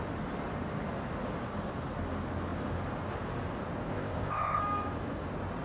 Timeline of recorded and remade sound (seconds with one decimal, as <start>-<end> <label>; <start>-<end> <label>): 0.0-3.9 recorded; 3.9-4.6 remade; 4.6-5.6 recorded